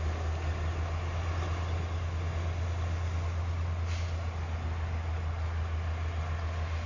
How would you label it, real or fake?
real